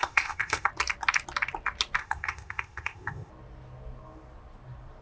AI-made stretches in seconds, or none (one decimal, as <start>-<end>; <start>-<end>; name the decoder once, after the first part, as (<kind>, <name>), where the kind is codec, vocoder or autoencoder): 0.0-0.7 (codec, ZipCodec); 2.0-3.3